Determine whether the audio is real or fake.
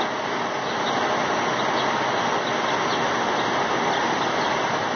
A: real